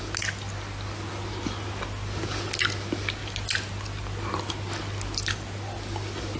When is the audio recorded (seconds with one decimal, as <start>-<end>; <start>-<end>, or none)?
0.0-6.4